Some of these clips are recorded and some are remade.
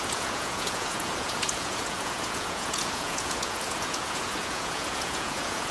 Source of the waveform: remade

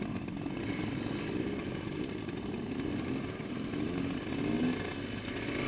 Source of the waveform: recorded